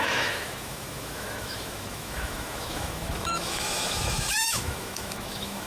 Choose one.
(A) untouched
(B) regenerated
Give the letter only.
B